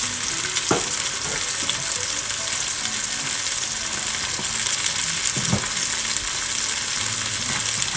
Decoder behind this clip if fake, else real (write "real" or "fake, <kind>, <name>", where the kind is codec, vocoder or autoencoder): real